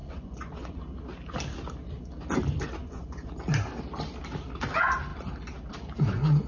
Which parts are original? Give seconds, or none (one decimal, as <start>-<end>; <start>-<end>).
0.8-2.8; 3.3-6.5